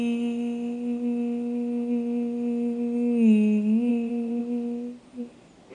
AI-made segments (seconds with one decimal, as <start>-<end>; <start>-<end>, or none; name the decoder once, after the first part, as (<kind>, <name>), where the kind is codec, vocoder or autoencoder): 3.9-4.4 (vocoder, Vocos)